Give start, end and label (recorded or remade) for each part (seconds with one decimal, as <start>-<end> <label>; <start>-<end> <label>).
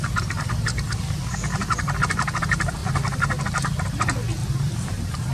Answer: 0.0-4.4 recorded; 4.4-5.3 remade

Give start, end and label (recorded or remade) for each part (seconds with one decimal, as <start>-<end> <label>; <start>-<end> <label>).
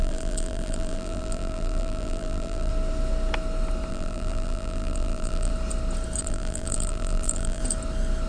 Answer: 0.0-2.7 remade; 2.7-3.9 recorded; 3.9-5.5 remade; 5.5-6.2 recorded; 6.2-7.6 remade; 7.6-8.3 recorded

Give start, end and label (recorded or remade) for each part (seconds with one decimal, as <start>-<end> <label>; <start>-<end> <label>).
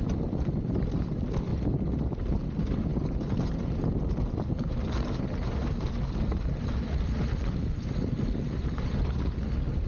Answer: 0.0-1.5 remade; 1.5-2.0 recorded; 2.0-2.9 remade; 2.9-4.1 recorded; 4.1-9.9 remade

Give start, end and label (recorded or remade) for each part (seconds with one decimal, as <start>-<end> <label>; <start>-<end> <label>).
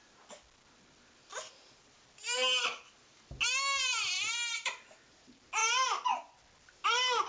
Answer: 0.0-7.3 recorded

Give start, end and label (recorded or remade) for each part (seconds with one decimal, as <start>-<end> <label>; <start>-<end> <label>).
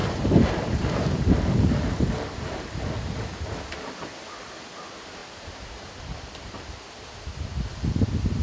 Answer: 0.0-2.8 remade; 2.8-5.2 recorded; 5.2-6.5 remade; 6.5-8.4 recorded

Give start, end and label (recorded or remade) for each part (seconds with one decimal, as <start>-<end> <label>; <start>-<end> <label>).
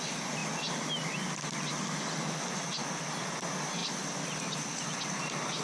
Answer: 0.0-5.6 recorded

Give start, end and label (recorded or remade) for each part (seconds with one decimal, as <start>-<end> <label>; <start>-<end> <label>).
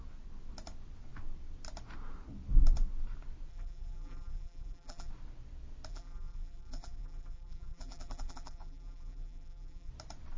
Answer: 0.0-3.5 recorded; 3.5-5.1 remade; 5.1-5.9 recorded; 5.9-9.9 remade; 9.9-10.4 recorded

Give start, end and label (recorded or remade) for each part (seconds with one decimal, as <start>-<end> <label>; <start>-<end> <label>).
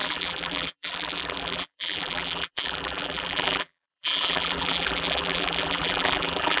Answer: 0.0-6.6 remade